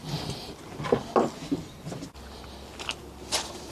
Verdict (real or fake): real